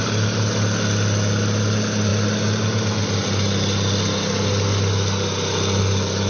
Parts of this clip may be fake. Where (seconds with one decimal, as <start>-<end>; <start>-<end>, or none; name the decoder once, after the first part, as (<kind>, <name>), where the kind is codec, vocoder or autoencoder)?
none